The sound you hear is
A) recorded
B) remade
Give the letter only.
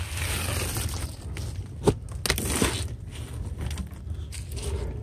A